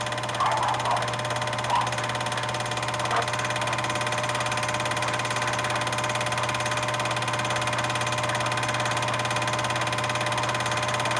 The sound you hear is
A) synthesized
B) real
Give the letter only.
B